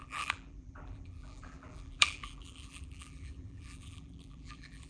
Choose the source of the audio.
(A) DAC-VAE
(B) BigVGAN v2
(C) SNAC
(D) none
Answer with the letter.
B